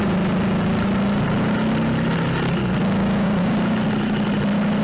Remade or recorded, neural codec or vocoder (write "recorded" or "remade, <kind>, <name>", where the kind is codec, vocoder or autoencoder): recorded